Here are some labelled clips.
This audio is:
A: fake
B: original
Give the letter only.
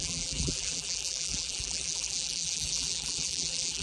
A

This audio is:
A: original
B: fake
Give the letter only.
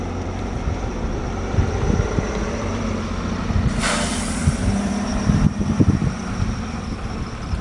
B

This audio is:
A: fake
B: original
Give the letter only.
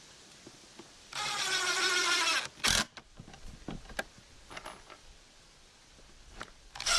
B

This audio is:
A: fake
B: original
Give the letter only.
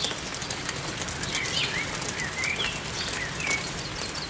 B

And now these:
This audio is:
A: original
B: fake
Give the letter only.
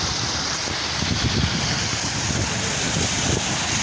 A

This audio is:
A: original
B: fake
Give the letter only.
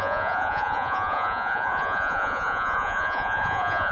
B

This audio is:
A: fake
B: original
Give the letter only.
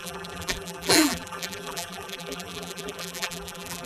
A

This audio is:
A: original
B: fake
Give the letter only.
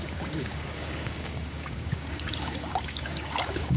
B